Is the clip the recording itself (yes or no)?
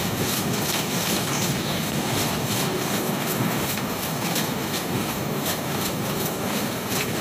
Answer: no